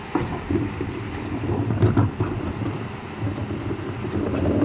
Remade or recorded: recorded